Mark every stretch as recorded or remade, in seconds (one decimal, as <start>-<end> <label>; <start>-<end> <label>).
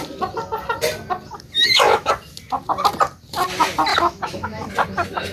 0.0-1.6 recorded; 1.6-2.1 remade; 2.1-3.9 recorded; 3.9-4.7 remade; 4.7-5.3 recorded